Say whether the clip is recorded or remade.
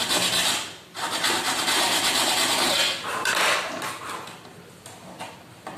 recorded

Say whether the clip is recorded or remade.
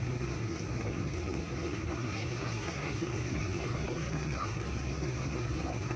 remade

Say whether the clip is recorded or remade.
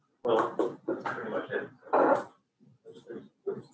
recorded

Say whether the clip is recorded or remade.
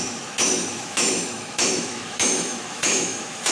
remade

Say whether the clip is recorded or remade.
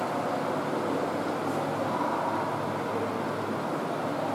recorded